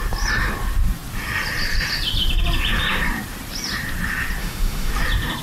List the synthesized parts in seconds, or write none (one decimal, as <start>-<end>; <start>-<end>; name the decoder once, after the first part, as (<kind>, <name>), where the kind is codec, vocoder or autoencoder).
4.4-4.9 (autoencoder, DAC-VAE)